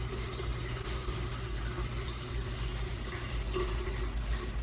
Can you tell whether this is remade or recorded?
recorded